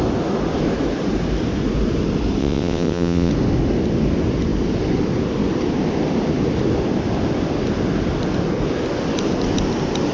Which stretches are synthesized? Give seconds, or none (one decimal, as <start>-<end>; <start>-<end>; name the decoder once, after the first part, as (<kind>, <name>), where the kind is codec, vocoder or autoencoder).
2.4-3.3 (vocoder, WaveNeXt)